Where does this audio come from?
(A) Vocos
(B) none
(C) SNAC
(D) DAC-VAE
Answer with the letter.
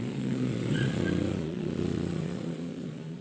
A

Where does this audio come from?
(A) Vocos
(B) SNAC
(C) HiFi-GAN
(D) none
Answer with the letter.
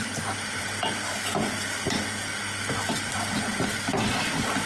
D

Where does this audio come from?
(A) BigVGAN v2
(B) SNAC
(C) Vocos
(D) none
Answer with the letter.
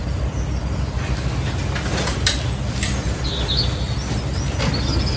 D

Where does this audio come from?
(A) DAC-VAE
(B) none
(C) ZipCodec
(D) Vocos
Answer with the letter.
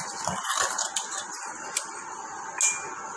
B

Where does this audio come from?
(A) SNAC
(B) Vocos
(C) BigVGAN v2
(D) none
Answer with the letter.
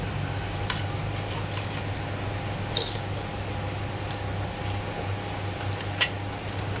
D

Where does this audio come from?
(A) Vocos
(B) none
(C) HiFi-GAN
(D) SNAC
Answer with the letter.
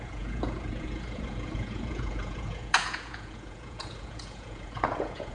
A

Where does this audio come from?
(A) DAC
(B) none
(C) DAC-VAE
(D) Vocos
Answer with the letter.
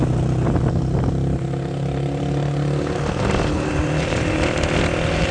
B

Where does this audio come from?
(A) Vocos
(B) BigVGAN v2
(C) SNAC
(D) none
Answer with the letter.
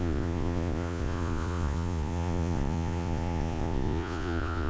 A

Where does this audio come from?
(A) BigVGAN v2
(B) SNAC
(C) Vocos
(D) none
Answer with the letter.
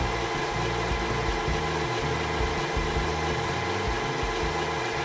D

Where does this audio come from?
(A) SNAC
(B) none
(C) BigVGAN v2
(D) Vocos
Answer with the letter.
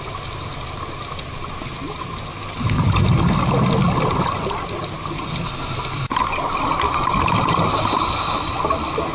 B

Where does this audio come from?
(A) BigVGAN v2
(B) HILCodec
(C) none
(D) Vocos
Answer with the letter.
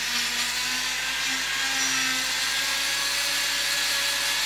C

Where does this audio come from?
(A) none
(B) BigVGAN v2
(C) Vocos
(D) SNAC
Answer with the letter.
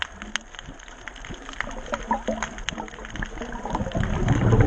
A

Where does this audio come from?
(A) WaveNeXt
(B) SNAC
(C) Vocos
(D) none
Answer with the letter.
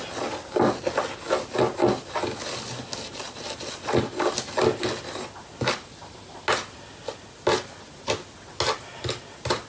D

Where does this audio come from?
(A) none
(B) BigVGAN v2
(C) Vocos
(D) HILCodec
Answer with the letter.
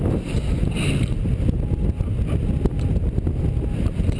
A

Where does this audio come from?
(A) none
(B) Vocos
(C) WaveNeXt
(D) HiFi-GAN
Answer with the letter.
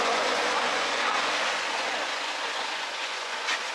B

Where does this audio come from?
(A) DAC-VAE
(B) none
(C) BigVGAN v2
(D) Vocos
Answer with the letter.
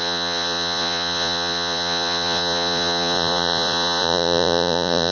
D